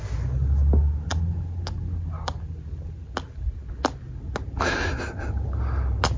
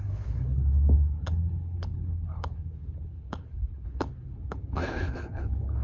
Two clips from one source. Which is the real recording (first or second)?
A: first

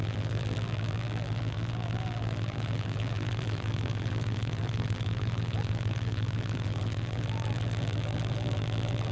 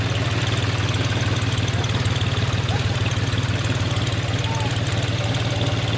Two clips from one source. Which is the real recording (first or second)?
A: second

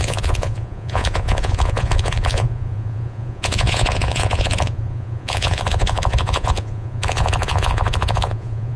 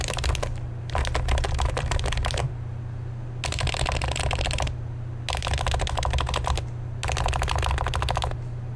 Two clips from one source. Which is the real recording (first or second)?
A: second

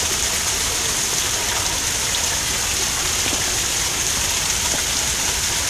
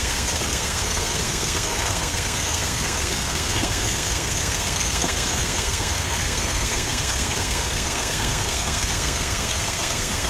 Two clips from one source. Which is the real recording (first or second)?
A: first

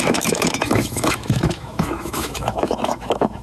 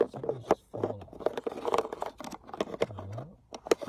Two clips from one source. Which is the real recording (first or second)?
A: second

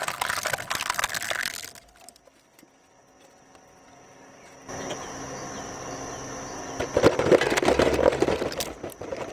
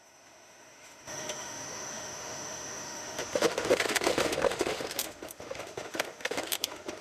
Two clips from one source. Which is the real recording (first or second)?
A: first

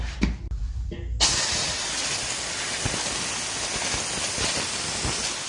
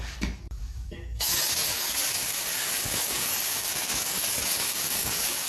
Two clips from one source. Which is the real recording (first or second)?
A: first